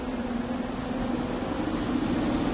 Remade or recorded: recorded